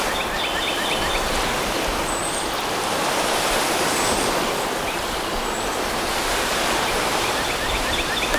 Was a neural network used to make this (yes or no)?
yes